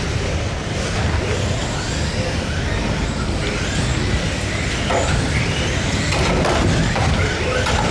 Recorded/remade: recorded